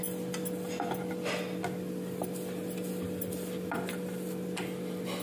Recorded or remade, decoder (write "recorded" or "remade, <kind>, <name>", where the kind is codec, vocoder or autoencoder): recorded